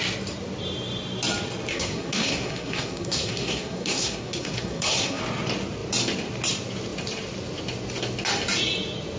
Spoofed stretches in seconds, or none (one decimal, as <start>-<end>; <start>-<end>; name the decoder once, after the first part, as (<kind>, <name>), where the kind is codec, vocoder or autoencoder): 1.7-5.2 (codec, SNAC)